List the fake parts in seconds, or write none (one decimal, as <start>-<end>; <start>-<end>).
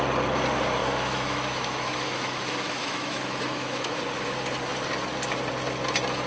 0.8-4.0